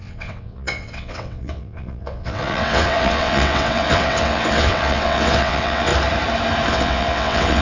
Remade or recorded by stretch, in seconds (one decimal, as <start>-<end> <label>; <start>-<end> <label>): 0.0-5.9 remade; 5.9-6.7 recorded; 6.7-7.6 remade